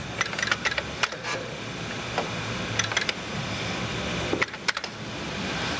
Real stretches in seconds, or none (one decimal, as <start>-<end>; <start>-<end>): 0.0-5.8